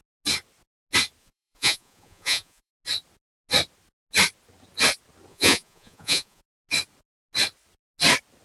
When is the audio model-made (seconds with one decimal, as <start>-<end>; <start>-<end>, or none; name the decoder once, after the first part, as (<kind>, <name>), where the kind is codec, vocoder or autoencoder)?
1.2-2.7 (vocoder, Vocos); 5.3-6.4

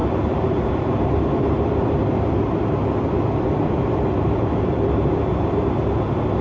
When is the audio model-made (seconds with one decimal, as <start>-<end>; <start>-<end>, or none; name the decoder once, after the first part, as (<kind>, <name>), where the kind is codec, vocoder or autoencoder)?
0.0-0.7 (vocoder, BigVGAN v2); 1.8-5.3

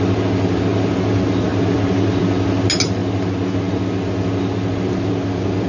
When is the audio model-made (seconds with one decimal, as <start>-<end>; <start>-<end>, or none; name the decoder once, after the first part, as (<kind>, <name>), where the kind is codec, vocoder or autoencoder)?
none

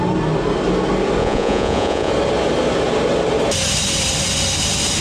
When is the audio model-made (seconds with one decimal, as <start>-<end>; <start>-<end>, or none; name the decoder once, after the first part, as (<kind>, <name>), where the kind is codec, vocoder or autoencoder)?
1.2-2.1 (vocoder, Vocos)